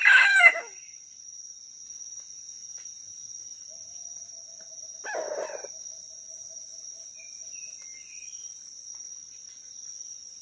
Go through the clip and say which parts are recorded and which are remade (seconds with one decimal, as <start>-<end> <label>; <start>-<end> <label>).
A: 0.0-7.9 recorded; 7.9-8.5 remade; 8.5-10.4 recorded